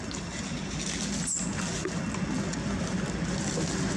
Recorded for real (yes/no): yes